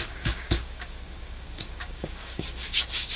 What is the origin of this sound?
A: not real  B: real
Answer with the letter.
A